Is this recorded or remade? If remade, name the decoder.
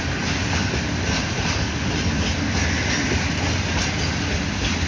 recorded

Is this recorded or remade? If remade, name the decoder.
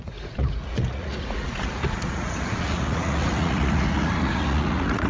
remade, vocoder, Vocos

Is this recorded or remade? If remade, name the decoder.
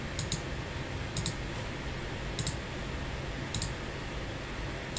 recorded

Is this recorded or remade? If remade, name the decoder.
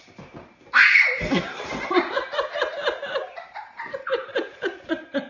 remade, vocoder, BigVGAN v2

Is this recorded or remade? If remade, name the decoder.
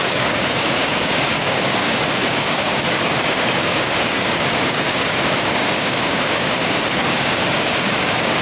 remade, codec, DAC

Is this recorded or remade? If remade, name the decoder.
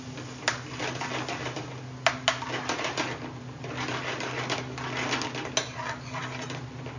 recorded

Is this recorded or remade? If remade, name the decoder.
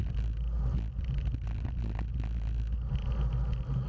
recorded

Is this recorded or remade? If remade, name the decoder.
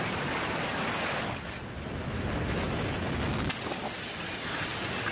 recorded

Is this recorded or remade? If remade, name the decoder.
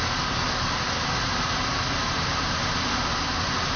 recorded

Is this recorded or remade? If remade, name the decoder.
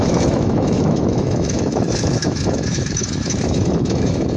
remade, autoencoder, DAC-VAE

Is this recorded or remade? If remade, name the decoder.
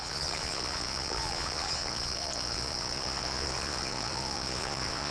remade, vocoder, Vocos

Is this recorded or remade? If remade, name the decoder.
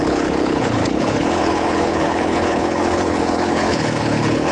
remade, codec, HILCodec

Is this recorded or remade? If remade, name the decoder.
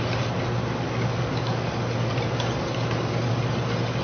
recorded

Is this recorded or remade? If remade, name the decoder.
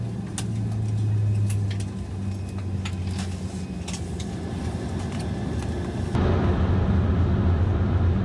recorded